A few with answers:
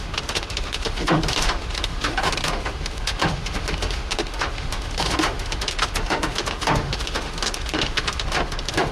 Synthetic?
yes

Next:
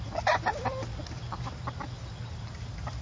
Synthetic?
no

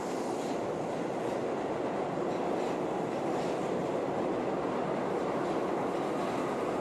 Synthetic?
no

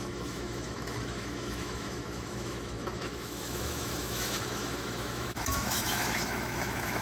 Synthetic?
yes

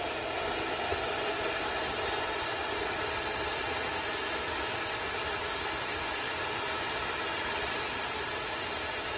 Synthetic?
no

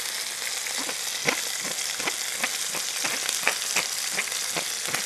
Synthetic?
no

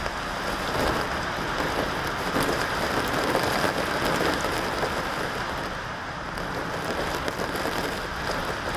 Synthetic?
no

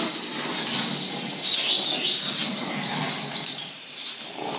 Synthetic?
no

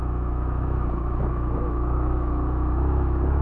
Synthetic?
yes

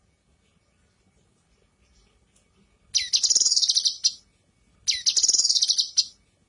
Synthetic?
no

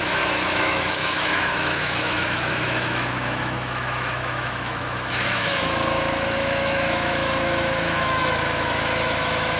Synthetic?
yes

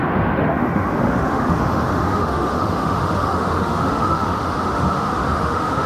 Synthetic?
yes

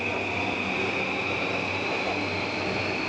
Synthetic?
no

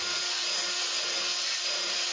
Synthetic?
no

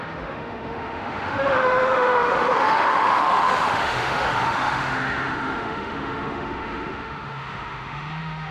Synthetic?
yes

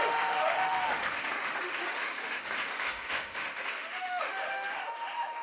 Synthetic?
yes